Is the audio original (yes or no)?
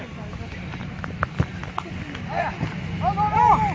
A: yes